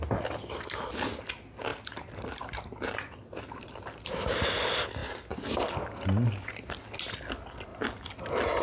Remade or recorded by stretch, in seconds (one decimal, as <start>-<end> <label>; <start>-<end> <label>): 0.0-1.7 recorded; 1.7-4.5 remade; 4.5-8.6 recorded